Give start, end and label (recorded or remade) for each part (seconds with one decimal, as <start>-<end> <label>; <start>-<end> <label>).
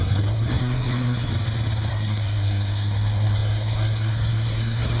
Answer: 0.0-1.3 remade; 1.3-1.9 recorded; 1.9-5.0 remade